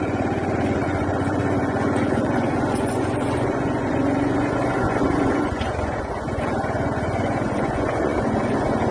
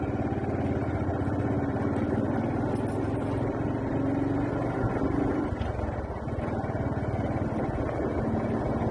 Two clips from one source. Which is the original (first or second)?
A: second